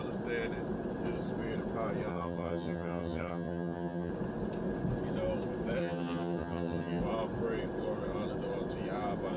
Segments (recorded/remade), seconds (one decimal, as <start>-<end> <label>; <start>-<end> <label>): 0.0-2.1 recorded; 2.1-4.1 remade; 4.1-5.8 recorded; 5.8-7.0 remade; 7.0-9.4 recorded